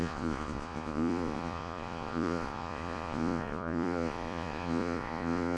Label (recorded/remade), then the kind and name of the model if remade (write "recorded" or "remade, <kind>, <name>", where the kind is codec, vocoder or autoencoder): remade, vocoder, Vocos